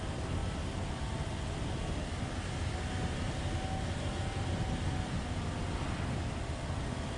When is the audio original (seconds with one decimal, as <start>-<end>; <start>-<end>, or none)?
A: 0.0-7.2